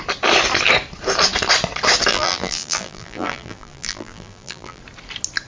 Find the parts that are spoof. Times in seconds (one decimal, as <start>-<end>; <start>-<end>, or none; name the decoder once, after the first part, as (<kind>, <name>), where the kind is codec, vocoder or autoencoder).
2.1-4.8 (vocoder, BigVGAN v2)